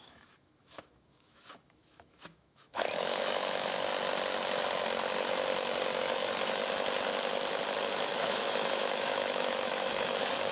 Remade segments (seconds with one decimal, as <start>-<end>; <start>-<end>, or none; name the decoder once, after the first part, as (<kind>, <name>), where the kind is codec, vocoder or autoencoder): 0.0-3.9 (autoencoder, DAC-VAE); 6.0-6.6; 7.8-10.5